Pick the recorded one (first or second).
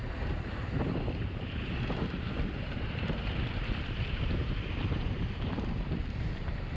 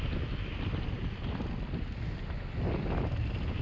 second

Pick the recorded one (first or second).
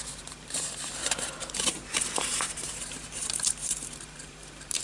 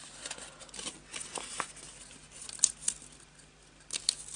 second